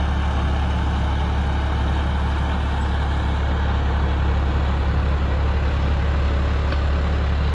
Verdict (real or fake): real